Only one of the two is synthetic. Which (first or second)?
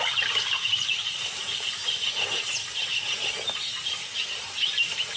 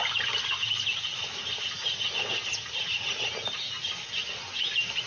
first